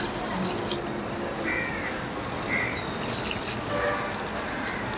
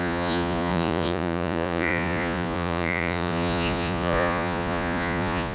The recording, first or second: first